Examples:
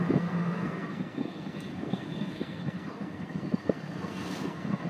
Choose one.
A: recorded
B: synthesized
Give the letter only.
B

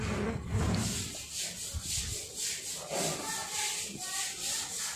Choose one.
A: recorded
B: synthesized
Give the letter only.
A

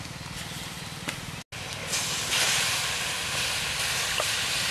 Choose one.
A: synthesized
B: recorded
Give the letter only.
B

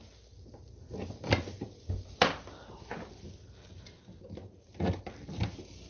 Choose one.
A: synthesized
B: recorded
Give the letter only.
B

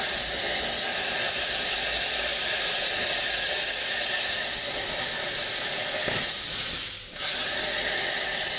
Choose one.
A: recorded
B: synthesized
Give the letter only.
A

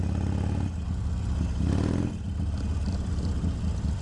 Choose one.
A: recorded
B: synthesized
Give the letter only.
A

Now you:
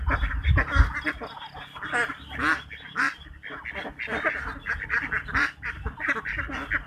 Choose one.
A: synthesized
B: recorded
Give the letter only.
B